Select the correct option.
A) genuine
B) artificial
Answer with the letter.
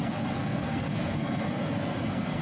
B